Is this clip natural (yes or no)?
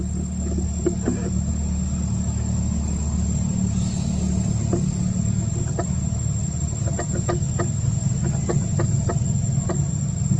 yes